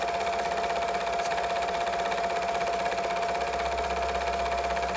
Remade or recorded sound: recorded